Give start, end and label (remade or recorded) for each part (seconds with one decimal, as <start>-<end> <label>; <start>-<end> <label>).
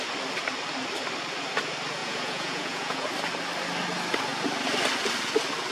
0.0-2.0 recorded; 2.0-3.1 remade; 3.1-5.7 recorded